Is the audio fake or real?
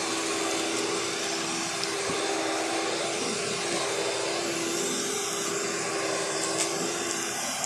real